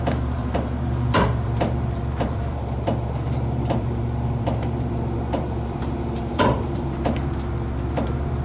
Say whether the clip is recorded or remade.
remade